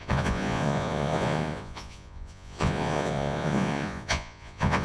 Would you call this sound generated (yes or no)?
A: yes